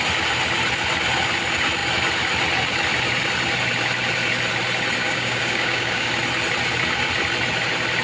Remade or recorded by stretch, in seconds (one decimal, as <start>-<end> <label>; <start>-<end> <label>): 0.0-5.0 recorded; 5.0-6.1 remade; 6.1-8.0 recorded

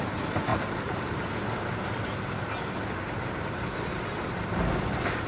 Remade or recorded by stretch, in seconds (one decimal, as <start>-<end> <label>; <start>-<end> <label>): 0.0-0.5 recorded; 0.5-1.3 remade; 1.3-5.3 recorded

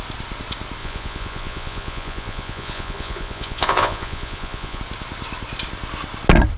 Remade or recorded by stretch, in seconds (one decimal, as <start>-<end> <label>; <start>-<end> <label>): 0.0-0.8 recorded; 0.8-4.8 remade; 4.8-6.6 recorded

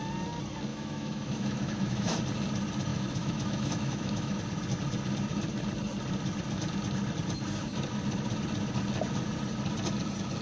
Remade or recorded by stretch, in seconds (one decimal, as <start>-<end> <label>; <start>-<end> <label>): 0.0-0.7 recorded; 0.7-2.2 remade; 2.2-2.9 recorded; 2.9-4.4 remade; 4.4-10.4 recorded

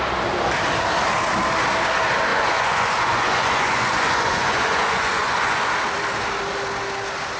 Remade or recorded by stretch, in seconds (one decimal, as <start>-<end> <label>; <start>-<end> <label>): 0.0-2.3 recorded; 2.3-5.6 remade; 5.6-7.4 recorded

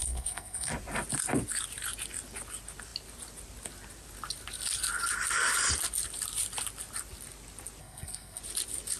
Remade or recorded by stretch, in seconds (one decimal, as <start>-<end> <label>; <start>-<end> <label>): 0.0-0.7 remade; 0.7-7.8 recorded; 7.8-8.4 remade; 8.4-9.0 recorded